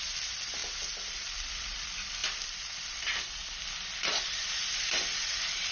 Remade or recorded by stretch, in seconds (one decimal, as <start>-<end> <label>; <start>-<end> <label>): 0.0-0.6 remade; 0.6-1.1 recorded; 1.1-3.4 remade; 3.4-4.1 recorded; 4.1-5.7 remade